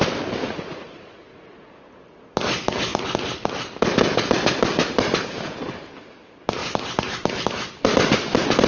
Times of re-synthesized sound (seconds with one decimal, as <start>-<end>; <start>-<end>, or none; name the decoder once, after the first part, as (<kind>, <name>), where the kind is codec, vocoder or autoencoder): 0.4-1.6 (vocoder, Vocos)